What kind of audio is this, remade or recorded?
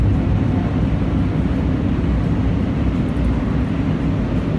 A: recorded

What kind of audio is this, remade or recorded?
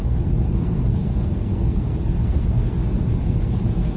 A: remade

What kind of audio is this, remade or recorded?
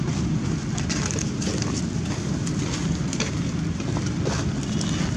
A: recorded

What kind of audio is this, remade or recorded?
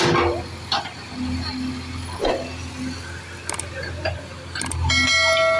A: recorded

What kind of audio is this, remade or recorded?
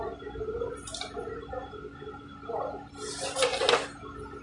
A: recorded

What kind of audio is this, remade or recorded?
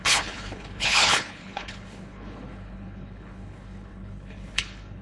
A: remade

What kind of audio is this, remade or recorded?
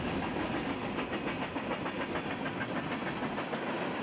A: recorded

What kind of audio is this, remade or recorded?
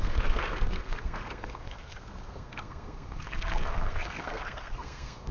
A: remade